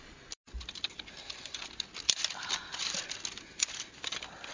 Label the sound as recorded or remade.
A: recorded